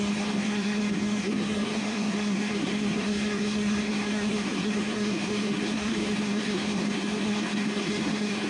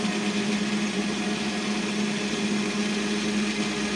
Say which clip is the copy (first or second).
first